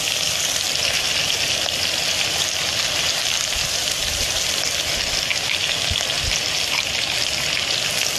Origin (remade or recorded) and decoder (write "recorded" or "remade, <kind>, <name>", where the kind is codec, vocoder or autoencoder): recorded